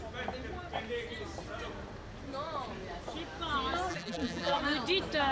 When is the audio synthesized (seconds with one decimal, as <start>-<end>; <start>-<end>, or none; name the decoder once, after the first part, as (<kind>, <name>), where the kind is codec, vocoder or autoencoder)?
3.9-4.6 (vocoder, BigVGAN v2)

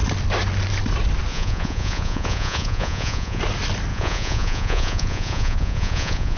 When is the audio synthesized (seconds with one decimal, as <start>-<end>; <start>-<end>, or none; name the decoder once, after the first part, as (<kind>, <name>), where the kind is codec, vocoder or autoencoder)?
1.3-3.4 (vocoder, Vocos); 3.9-6.4

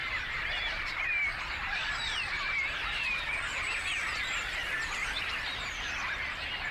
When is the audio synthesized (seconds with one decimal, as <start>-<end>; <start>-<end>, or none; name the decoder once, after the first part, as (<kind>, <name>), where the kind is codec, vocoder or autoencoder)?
0.0-4.0 (vocoder, BigVGAN v2); 4.6-5.6

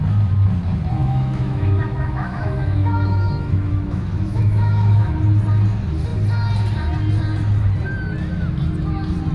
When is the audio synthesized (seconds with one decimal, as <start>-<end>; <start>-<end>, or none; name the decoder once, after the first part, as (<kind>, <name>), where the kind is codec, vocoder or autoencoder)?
1.0-5.1 (autoencoder, DAC-VAE)

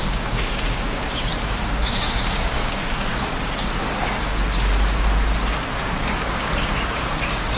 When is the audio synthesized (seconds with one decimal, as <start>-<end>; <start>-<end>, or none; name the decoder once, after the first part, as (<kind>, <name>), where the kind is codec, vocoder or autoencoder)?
0.0-3.1 (codec, DAC); 6.0-7.6

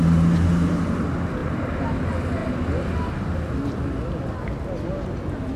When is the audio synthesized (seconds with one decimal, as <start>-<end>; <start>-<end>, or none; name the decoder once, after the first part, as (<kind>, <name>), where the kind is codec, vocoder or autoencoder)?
1.4-2.0 (vocoder, BigVGAN v2)